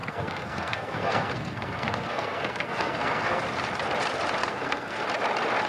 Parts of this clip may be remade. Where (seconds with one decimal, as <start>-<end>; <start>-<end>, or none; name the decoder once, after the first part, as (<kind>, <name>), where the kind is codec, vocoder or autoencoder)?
0.0-3.4 (codec, SNAC); 4.4-5.0